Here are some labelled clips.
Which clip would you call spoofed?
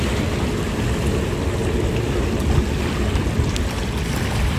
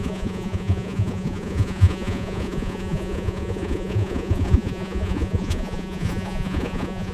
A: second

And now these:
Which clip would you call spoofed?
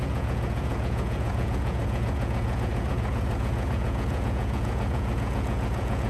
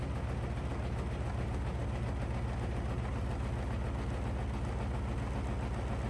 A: first